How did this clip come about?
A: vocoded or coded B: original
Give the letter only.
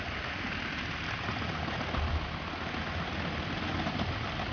B